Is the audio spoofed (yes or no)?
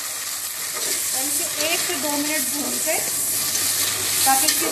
no